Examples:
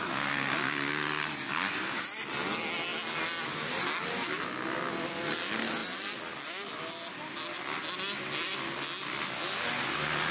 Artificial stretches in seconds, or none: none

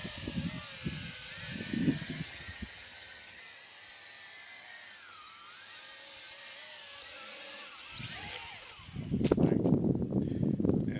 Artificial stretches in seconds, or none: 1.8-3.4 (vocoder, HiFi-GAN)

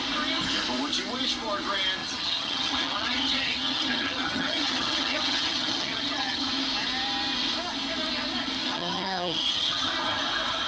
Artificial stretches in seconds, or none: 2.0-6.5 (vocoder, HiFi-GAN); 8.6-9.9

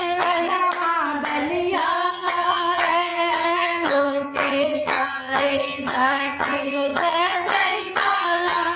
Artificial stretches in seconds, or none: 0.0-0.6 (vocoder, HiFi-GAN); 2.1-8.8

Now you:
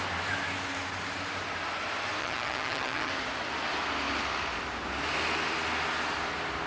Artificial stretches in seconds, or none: 2.2-3.1 (vocoder, HiFi-GAN)

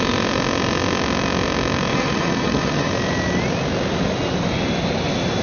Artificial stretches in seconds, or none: 1.9-2.9 (vocoder, HiFi-GAN)

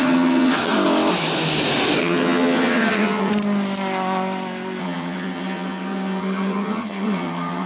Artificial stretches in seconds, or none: 0.0-0.7 (vocoder, HiFi-GAN); 2.0-3.3; 4.8-7.7